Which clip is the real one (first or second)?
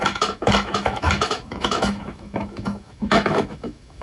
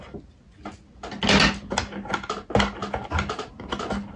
second